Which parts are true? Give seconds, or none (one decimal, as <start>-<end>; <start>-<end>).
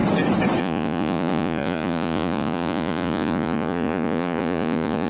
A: 0.0-0.6